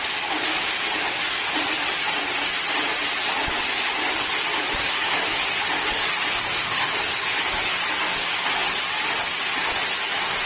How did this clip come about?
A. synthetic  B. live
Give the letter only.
B